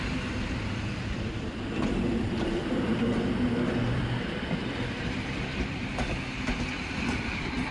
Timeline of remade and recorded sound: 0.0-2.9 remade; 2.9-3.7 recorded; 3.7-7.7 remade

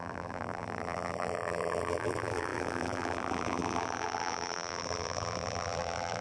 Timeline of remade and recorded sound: 0.0-6.2 remade

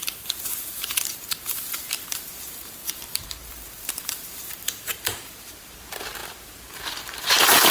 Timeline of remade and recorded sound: 0.0-3.5 remade; 3.5-4.0 recorded; 4.0-7.7 remade